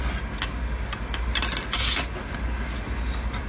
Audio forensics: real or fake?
real